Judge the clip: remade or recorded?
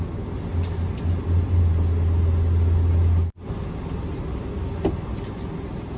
recorded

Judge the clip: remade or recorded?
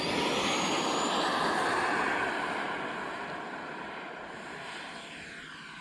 recorded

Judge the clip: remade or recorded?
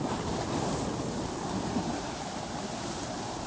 recorded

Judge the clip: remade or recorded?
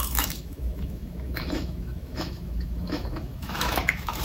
remade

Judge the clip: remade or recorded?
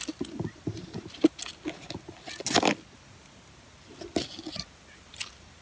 recorded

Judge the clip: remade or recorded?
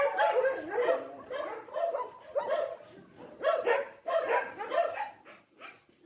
recorded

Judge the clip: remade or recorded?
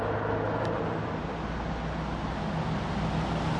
recorded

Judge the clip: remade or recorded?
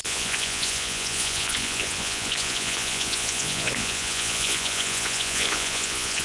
remade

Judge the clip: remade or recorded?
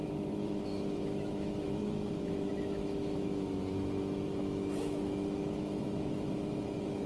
remade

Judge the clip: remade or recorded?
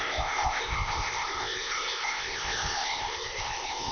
remade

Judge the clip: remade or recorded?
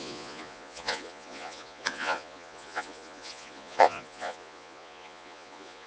remade